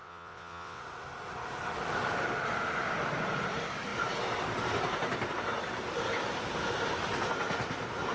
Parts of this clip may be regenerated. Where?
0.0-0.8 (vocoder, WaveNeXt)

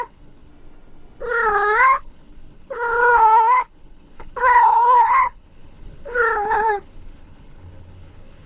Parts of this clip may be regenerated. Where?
0.0-0.5 (codec, HILCodec); 1.3-8.5

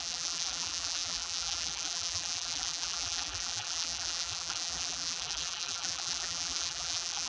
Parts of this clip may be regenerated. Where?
0.0-7.3 (vocoder, BigVGAN v2)